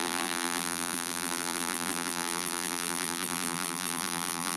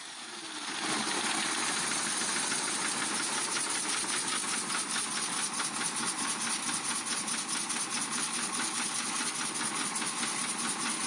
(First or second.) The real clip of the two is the second